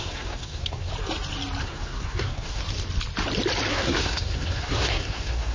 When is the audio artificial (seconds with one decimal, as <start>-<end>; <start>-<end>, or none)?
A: 0.0-0.9; 1.6-2.6; 3.7-5.5